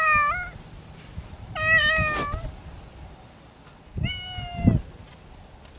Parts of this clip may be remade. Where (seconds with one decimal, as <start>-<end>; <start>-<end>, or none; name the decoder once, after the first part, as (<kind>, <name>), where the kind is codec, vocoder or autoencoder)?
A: none